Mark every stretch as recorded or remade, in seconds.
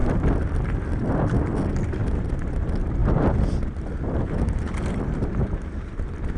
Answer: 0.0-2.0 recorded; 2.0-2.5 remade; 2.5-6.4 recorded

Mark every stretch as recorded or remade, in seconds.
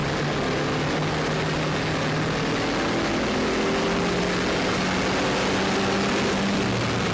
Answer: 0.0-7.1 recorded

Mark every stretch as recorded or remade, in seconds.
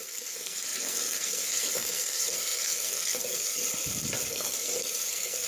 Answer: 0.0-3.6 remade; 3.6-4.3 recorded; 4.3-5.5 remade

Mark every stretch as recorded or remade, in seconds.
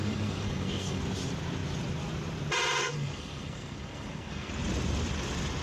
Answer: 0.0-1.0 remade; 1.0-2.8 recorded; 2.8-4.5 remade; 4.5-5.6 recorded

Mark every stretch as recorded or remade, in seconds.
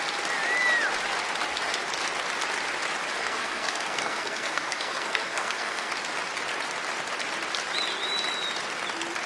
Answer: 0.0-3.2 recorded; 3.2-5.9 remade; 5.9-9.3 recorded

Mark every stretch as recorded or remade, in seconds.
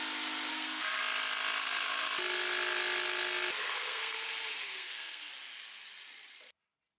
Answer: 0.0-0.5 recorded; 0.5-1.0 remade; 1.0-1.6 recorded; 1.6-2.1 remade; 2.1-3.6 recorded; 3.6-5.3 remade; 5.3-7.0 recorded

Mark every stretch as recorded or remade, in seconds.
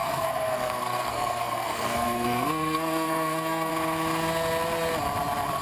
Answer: 0.0-3.7 remade; 3.7-5.6 recorded